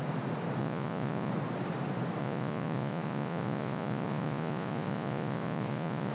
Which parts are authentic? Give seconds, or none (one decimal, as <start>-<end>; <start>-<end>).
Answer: 0.0-0.6; 1.3-2.2

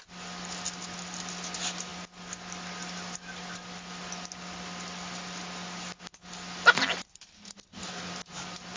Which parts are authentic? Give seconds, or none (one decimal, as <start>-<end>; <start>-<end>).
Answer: 0.0-8.8

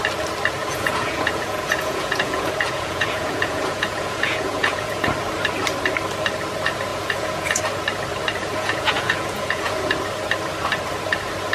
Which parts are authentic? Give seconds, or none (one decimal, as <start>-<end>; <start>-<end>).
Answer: 0.0-0.6; 5.0-6.9; 7.6-8.4; 9.9-11.5

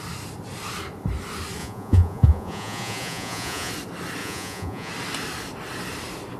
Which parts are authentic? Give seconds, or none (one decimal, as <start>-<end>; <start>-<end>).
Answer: 0.0-1.6; 3.7-4.2; 4.9-6.4

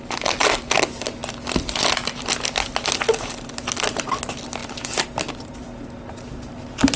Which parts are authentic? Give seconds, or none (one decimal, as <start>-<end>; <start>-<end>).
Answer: 0.0-7.0